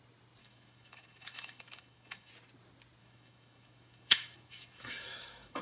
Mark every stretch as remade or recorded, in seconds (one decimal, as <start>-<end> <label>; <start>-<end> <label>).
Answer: 0.0-0.4 recorded; 0.4-2.3 remade; 2.3-3.0 recorded; 3.0-5.6 remade